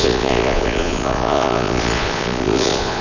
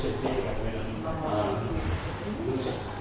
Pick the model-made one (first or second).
first